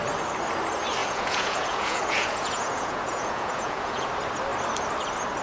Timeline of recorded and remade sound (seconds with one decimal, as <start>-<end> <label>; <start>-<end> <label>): 0.0-1.0 recorded; 1.0-4.1 remade; 4.1-5.4 recorded